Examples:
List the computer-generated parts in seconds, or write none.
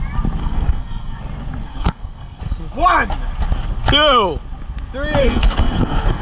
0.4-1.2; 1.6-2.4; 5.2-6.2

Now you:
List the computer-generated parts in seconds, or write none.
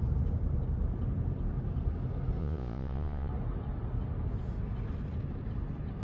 2.4-3.3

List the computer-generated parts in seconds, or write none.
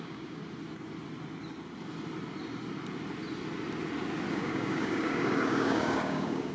0.0-0.4; 4.3-6.5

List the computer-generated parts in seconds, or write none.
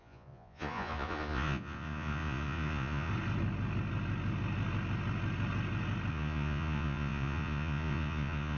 0.0-3.1; 6.1-8.6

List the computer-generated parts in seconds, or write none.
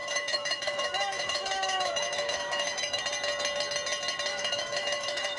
0.0-3.0; 4.3-5.4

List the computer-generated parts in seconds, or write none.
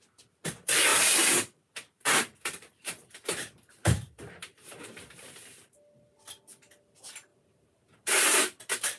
0.9-5.3; 7.3-8.6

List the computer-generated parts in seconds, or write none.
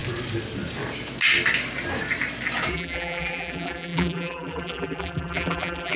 2.7-6.0